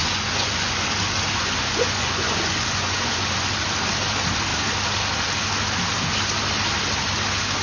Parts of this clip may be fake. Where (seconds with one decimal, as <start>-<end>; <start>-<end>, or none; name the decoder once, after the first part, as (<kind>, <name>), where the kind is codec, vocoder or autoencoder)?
0.0-0.9 (vocoder, Vocos); 1.4-3.5